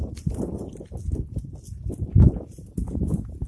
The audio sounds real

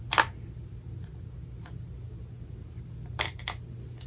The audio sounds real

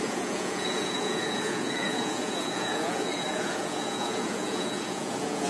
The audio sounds fake